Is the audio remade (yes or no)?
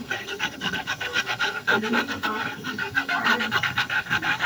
yes